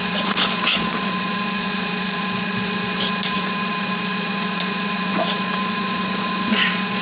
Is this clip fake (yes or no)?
yes